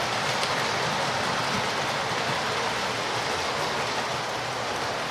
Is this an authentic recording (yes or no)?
yes